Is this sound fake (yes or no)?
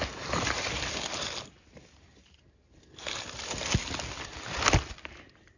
no